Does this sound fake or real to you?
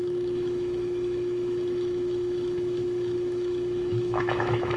fake